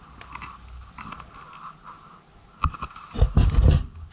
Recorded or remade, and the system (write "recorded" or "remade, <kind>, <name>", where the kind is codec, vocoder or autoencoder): recorded